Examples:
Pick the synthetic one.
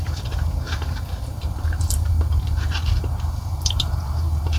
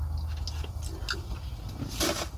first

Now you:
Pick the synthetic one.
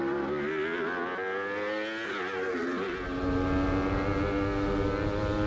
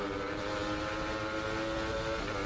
second